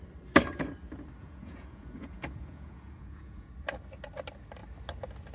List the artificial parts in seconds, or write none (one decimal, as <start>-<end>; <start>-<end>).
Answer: 1.2-3.5